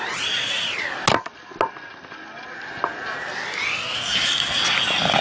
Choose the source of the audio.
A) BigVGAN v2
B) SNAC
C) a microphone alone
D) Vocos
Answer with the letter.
C